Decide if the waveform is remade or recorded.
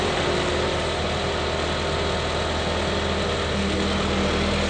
recorded